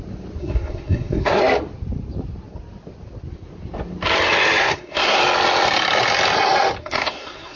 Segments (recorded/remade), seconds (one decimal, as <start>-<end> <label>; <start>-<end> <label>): 0.0-0.4 recorded; 0.4-1.4 remade; 1.4-4.6 recorded; 4.6-5.2 remade; 5.2-6.8 recorded; 6.8-7.6 remade